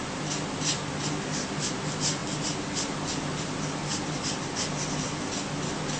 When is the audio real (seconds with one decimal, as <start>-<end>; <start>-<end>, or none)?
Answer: 0.0-6.0